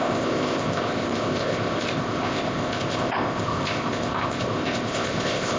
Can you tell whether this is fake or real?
fake